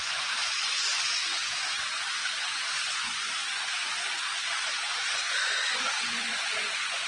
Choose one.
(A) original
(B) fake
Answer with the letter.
B